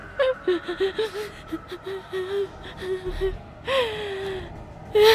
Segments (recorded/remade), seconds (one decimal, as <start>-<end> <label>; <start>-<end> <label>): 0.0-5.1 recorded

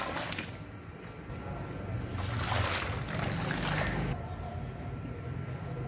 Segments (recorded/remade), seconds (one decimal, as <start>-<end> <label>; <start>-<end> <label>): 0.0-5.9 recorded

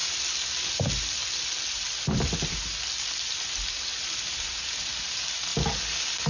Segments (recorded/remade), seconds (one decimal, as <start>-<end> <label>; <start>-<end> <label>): 0.0-6.3 recorded

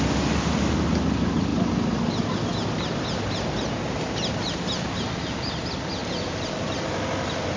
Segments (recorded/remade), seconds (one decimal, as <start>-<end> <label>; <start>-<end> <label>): 0.0-7.6 recorded

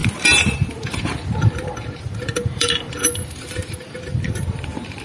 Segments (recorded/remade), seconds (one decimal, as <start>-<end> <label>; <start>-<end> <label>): 0.0-5.0 remade